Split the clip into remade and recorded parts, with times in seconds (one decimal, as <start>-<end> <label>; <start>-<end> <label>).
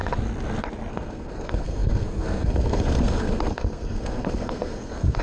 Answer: 0.0-0.9 recorded; 0.9-5.2 remade